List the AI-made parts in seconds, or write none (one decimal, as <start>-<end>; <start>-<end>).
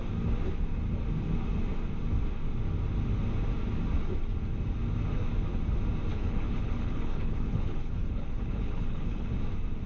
6.1-9.3